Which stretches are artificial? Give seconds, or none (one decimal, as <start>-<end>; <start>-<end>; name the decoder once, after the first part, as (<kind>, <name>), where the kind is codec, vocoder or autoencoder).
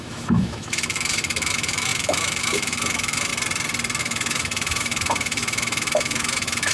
0.0-3.3 (autoencoder, DAC-VAE); 4.0-6.7